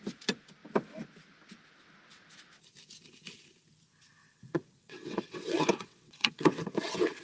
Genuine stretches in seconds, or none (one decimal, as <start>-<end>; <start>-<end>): 0.0-4.2